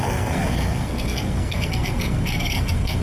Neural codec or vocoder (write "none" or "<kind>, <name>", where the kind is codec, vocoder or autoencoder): codec, SNAC